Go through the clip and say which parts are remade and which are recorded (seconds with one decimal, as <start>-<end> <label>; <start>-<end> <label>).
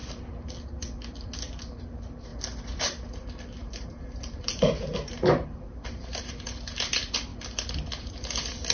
0.0-3.6 recorded; 3.6-6.3 remade; 6.3-8.7 recorded